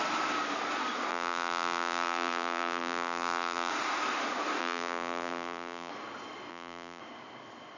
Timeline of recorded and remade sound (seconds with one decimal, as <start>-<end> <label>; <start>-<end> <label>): 0.0-1.1 recorded; 1.1-3.7 remade; 3.7-4.6 recorded; 4.6-5.9 remade; 5.9-6.5 recorded; 6.5-7.0 remade; 7.0-7.8 recorded